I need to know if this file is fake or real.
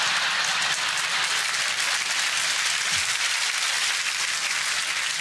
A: real